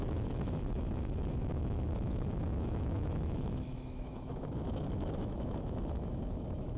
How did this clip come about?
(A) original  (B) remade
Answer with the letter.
B